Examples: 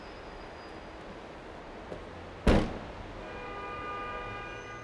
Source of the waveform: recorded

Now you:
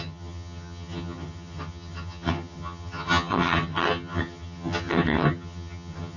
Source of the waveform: remade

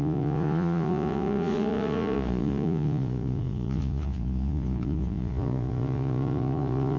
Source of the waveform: remade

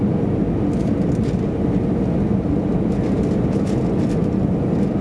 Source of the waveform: recorded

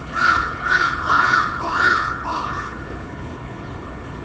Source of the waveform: remade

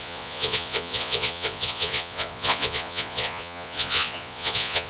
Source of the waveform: remade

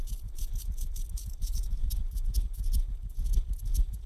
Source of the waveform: remade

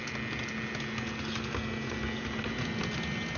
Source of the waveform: recorded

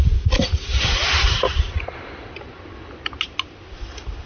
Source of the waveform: recorded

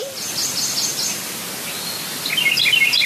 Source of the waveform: recorded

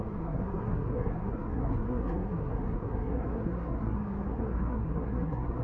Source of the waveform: remade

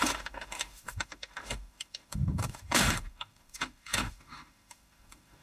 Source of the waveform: remade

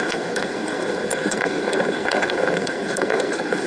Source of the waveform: remade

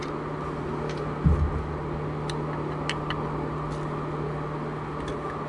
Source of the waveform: recorded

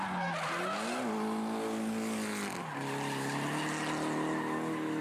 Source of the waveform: recorded